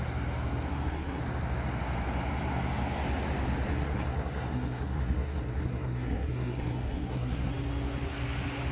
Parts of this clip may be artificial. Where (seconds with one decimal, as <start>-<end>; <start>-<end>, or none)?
0.7-1.2; 3.7-7.5